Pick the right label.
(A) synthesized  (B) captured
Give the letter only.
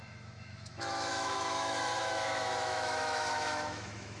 A